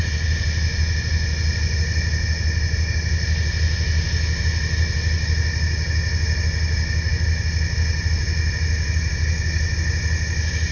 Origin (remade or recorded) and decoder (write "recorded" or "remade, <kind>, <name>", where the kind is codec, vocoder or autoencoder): recorded